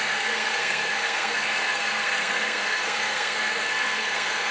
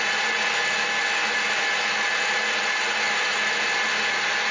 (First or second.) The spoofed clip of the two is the first